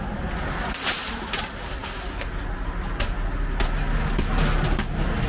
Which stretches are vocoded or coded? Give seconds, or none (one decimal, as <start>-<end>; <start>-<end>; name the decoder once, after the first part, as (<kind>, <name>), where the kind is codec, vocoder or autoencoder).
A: none